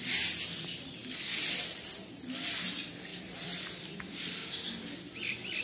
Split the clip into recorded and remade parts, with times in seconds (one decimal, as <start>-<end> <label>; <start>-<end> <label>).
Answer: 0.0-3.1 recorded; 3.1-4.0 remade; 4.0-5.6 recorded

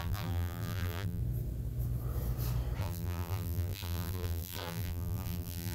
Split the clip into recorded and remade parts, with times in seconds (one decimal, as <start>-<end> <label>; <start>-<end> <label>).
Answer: 0.0-1.2 remade; 1.2-2.8 recorded; 2.8-5.7 remade

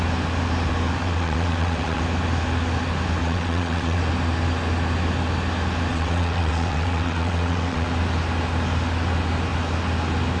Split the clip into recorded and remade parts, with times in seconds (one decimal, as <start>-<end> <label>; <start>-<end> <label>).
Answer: 0.0-1.0 recorded; 1.0-2.0 remade; 2.0-3.2 recorded; 3.2-4.0 remade; 4.0-5.9 recorded; 5.9-7.9 remade; 7.9-10.4 recorded

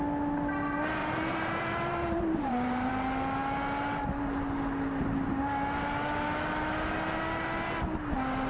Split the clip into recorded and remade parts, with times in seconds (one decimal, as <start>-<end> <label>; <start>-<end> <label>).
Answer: 0.0-1.0 recorded; 1.0-2.9 remade; 2.9-8.5 recorded

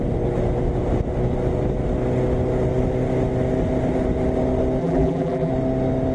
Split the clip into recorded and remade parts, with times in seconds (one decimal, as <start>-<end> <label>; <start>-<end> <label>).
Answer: 0.0-4.8 recorded; 4.8-5.5 remade; 5.5-6.1 recorded